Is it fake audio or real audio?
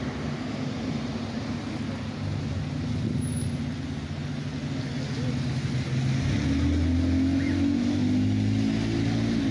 real